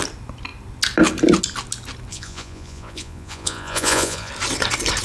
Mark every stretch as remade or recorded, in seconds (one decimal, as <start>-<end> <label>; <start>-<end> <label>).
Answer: 0.0-2.1 recorded; 2.1-4.3 remade; 4.3-5.0 recorded